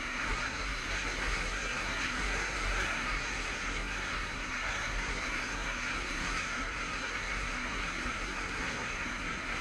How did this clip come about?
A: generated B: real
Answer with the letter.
A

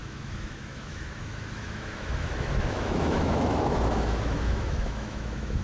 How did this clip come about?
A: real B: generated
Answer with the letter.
B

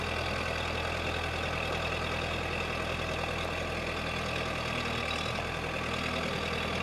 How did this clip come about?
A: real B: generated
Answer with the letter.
A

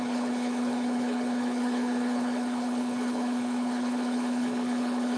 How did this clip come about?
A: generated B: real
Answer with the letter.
A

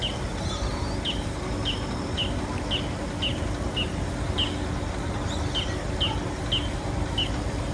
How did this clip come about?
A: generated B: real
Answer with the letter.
B